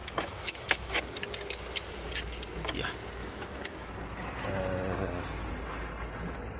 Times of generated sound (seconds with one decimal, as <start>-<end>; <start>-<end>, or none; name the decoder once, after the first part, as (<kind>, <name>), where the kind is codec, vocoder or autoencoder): 0.0-1.0 (autoencoder, DAC-VAE); 3.2-3.9